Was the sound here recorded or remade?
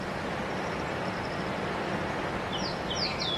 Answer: recorded